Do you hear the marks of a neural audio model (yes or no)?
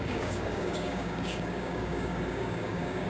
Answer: yes